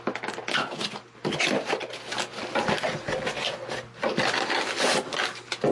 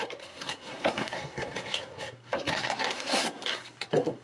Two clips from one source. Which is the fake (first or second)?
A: second